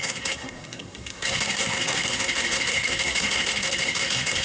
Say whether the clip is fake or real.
fake